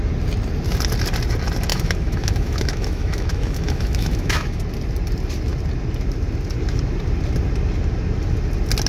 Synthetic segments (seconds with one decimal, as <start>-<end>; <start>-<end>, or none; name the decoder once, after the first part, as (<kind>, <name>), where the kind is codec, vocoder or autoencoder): 1.7-4.6 (autoencoder, DAC-VAE)